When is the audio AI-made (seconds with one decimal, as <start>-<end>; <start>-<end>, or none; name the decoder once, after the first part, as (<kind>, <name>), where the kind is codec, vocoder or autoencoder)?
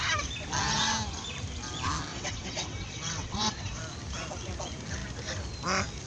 2.1-3.8 (vocoder, WaveNeXt)